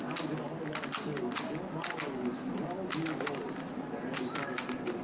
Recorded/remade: recorded